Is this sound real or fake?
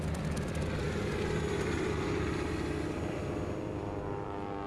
fake